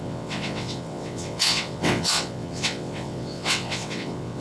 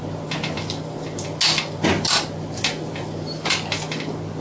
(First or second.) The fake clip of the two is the first